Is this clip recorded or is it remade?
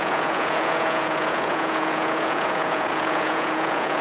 remade